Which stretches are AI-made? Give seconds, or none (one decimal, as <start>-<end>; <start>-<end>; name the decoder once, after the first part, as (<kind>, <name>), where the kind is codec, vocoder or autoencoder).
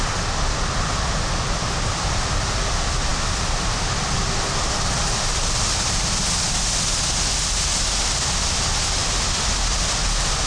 none